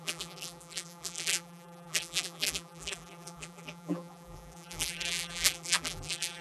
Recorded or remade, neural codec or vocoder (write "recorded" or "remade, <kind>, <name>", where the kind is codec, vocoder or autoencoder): remade, vocoder, BigVGAN v2